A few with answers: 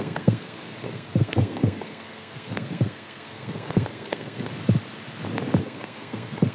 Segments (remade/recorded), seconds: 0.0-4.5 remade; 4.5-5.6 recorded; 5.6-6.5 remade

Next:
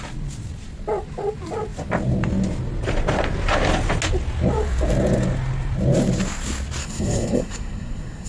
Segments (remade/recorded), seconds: 0.0-6.8 recorded; 6.8-8.3 remade

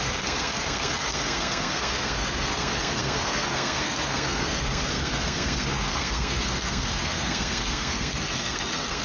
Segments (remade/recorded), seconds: 0.0-9.0 remade

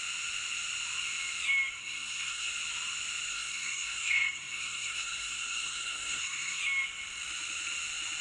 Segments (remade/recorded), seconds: 0.0-1.8 recorded; 1.8-2.5 remade; 2.5-3.3 recorded; 3.3-6.6 remade; 6.6-8.2 recorded

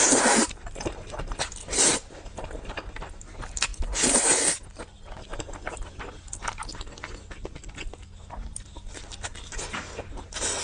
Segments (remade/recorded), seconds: 0.0-10.6 recorded